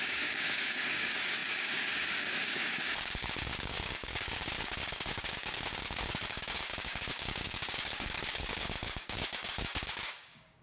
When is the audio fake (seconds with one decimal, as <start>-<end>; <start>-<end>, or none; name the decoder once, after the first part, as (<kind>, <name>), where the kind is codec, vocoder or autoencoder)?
0.0-10.6 (codec, DAC)